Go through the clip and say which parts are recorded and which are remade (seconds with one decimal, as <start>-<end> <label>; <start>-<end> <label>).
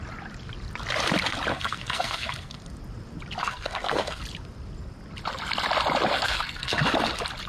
0.0-1.5 recorded; 1.5-2.6 remade; 2.6-3.4 recorded; 3.4-4.2 remade; 4.2-6.1 recorded; 6.1-6.8 remade; 6.8-7.5 recorded